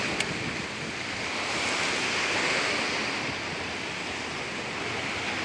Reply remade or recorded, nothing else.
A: recorded